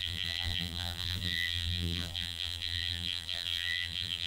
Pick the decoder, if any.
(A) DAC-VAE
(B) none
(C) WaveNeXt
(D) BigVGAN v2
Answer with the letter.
D